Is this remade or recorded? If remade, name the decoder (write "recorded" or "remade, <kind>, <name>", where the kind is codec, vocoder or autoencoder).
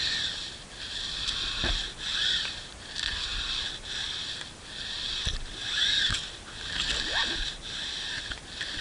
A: recorded